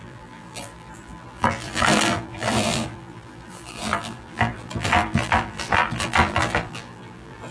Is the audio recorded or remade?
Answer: remade